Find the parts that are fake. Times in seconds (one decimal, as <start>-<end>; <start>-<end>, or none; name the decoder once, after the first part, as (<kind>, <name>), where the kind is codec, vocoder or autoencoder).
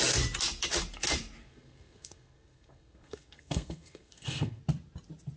1.4-4.6 (codec, SNAC)